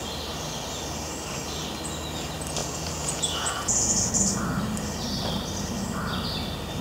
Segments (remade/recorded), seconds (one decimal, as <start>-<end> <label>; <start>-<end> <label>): 0.0-2.6 recorded; 2.6-4.1 remade; 4.1-6.8 recorded